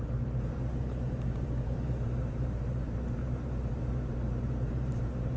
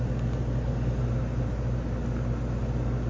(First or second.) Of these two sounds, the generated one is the first